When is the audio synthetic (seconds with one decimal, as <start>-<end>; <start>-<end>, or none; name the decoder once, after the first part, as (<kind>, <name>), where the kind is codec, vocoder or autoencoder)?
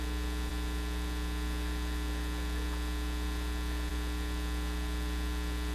none